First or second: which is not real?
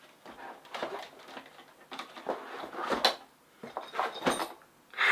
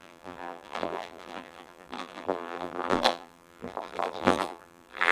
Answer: second